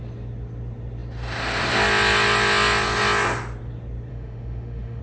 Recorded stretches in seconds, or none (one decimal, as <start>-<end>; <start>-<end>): 0.0-4.1